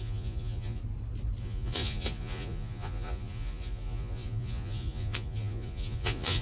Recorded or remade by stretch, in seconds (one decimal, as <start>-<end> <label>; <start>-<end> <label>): 0.0-0.8 remade; 0.8-1.4 recorded; 1.4-6.4 remade